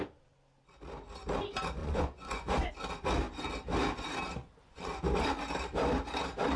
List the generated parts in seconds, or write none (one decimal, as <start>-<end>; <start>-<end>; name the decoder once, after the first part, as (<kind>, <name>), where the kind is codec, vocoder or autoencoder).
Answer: 1.8-2.7 (vocoder, Vocos); 4.4-5.0